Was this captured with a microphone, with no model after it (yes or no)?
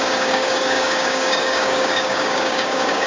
no